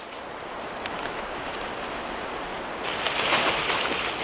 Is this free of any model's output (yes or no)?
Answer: yes